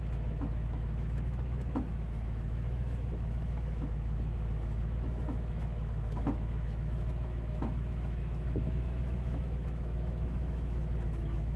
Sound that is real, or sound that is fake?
fake